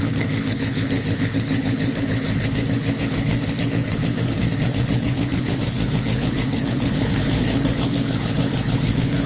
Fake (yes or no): yes